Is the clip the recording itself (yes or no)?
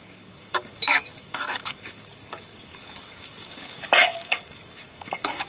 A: no